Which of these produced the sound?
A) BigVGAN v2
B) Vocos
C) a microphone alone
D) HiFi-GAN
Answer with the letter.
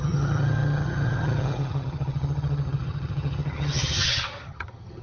D